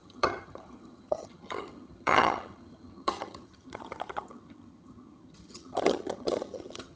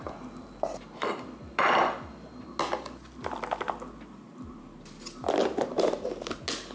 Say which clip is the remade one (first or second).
first